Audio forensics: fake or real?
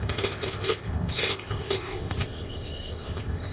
fake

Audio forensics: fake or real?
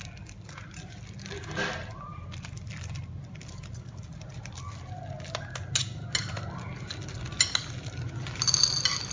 real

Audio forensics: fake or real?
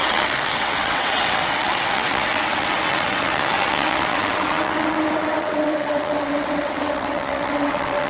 fake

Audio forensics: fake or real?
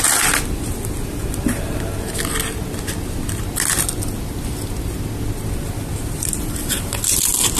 real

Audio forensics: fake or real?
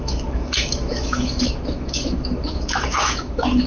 fake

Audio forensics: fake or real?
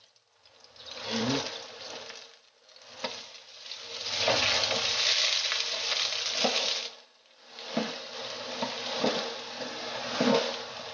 real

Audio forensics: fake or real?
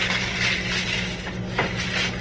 real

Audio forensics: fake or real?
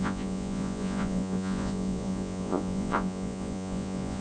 fake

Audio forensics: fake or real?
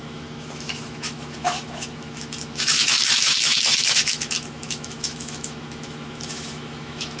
fake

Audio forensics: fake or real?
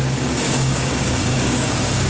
fake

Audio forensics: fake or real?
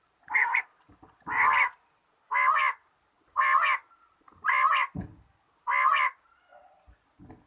real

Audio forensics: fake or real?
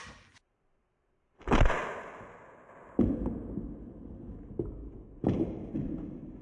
real